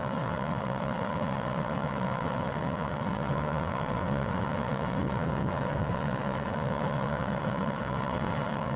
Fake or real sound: fake